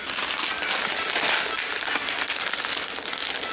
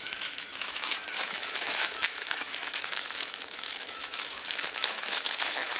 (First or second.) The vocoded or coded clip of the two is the second